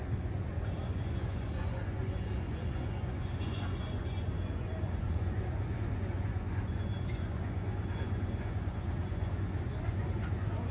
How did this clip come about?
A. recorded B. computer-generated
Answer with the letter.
B